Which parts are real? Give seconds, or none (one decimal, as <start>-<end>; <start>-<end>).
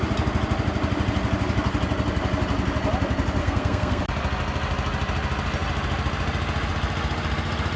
0.0-3.4; 4.0-7.8